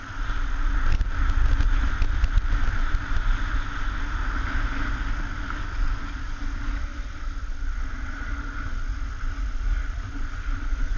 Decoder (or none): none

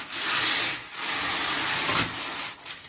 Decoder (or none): none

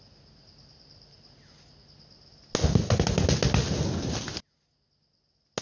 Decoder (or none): none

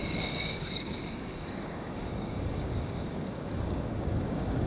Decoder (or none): codec, DAC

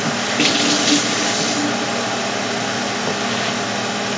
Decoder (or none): none